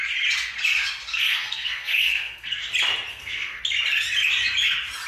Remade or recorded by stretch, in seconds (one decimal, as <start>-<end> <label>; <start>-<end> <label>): 0.0-1.1 recorded; 1.1-2.7 remade; 2.7-3.1 recorded; 3.1-3.6 remade; 3.6-5.1 recorded